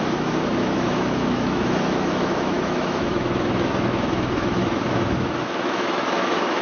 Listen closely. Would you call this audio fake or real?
fake